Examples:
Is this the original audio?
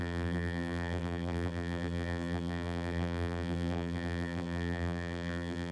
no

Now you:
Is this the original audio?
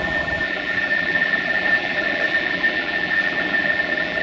no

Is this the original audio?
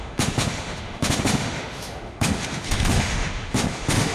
no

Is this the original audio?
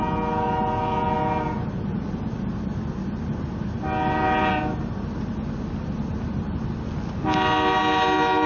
yes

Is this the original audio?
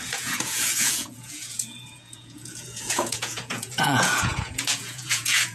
no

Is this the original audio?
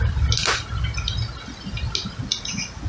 yes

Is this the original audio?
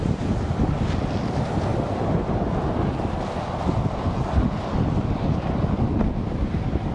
yes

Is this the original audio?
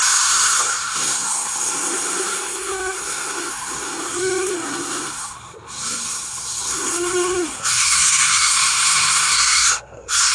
no